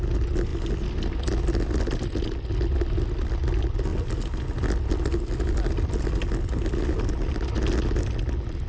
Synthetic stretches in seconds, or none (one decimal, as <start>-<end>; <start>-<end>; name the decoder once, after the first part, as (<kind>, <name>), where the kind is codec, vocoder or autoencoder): none